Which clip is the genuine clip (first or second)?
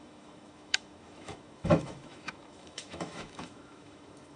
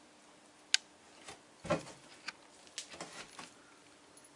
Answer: second